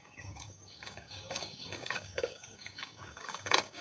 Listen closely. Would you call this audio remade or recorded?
remade